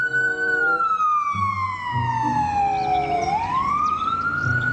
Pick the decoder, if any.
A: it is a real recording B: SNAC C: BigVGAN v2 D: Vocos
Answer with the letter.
C